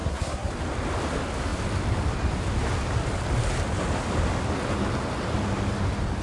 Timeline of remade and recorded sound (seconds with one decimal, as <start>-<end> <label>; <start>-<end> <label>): 0.0-0.5 remade; 0.5-6.2 recorded